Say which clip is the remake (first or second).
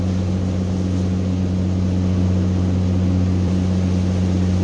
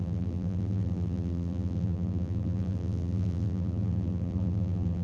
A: second